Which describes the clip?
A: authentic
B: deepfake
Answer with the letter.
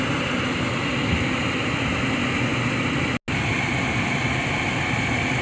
A